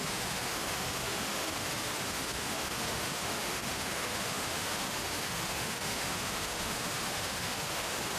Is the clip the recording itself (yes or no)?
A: no